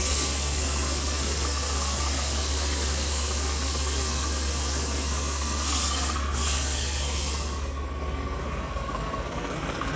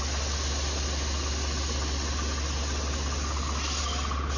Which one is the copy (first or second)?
first